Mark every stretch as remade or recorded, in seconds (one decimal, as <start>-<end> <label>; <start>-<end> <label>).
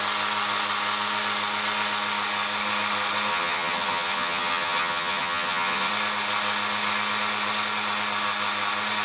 0.0-3.3 recorded; 3.3-5.9 remade; 5.9-9.0 recorded